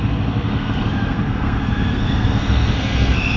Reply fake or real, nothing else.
fake